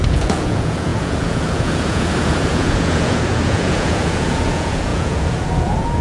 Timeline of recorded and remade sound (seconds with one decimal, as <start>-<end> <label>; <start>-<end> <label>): 0.0-6.0 remade